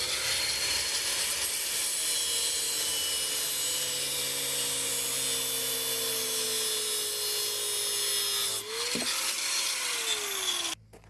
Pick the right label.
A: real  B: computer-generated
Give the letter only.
A